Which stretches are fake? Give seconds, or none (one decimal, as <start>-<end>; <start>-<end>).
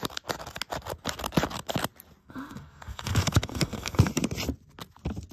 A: 2.2-4.1